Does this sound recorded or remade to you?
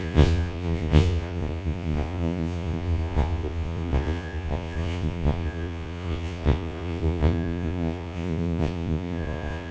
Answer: remade